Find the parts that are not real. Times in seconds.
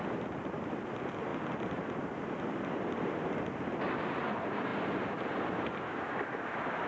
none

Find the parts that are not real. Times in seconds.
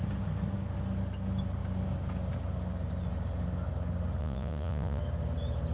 4.2-5.0 (vocoder, Vocos)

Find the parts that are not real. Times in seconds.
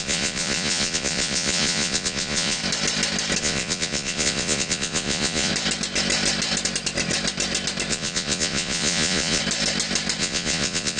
0.0-2.6 (vocoder, Vocos); 3.4-5.5; 7.9-9.4; 10.2-11.0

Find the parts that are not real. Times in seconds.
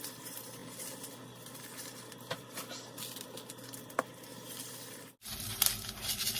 none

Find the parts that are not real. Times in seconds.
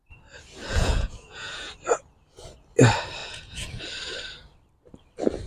0.7-1.7 (vocoder, Vocos); 3.2-3.8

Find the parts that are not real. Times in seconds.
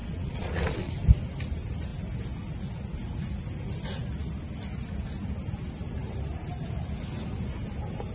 0.0-0.9 (vocoder, Vocos)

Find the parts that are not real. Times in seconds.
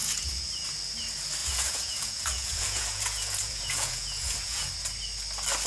0.0-0.5 (vocoder, Vocos); 1.4-4.7